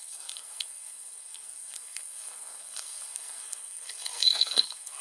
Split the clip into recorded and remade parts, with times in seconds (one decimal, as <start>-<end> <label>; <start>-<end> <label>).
0.0-5.0 remade